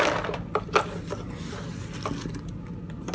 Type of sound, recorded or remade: recorded